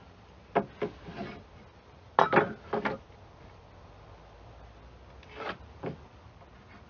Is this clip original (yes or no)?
yes